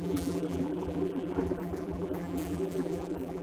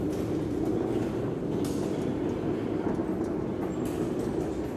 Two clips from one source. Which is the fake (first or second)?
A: first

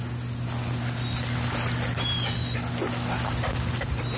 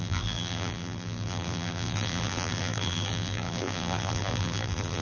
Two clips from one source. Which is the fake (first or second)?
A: second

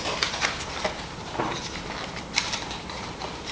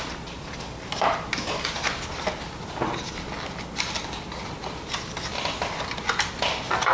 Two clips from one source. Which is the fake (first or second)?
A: first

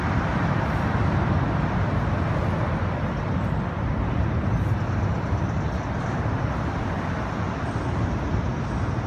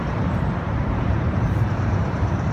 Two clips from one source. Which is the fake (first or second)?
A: second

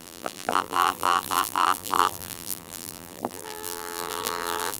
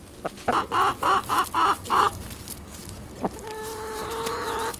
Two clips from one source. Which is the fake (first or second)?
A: first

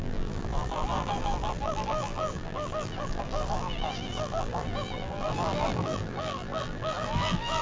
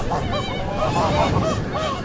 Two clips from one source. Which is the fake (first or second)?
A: first